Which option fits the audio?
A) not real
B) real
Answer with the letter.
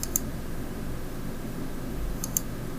B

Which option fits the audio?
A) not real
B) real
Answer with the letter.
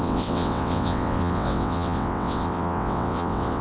A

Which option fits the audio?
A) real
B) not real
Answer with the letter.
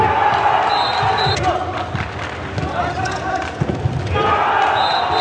A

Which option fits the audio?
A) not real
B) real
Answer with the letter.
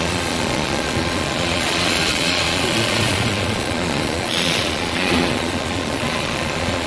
A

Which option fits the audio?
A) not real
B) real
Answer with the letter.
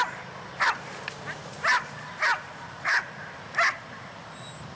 A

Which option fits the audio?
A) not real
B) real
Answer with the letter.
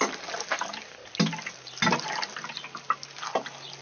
B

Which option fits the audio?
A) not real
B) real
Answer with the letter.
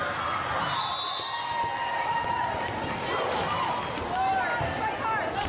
B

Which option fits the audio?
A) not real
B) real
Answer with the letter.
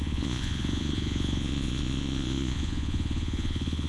A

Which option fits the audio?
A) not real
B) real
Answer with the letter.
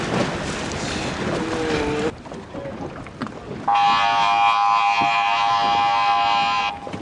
B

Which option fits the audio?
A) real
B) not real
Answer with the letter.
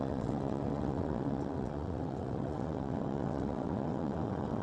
B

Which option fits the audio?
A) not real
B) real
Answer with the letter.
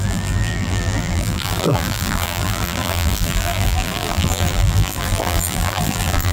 A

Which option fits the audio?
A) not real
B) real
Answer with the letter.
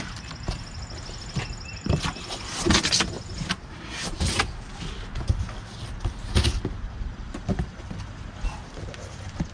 B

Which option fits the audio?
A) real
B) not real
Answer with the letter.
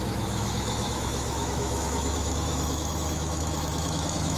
B